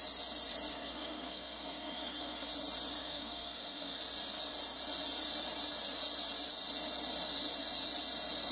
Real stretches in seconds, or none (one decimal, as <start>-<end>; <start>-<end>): 0.0-0.7; 2.5-3.0; 4.0-8.5

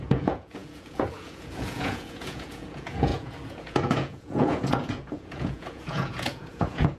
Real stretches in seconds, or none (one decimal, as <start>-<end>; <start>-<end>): none

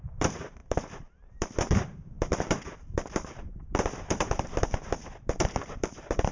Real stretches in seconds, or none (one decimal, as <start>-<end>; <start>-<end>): none

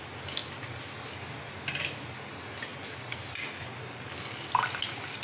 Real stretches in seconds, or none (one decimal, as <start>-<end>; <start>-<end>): 0.0-5.2